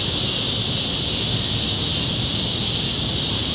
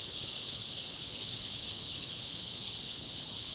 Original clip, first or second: first